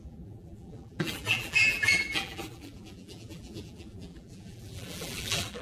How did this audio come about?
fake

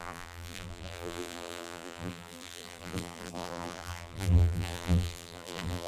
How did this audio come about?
fake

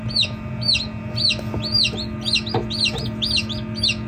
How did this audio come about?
real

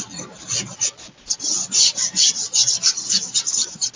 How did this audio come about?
real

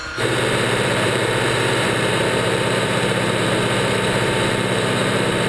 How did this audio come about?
fake